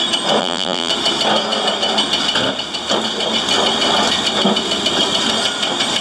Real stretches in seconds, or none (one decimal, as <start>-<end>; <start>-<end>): 0.0-0.4; 0.9-6.0